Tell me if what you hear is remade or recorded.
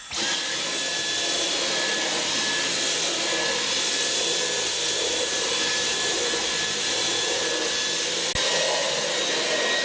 recorded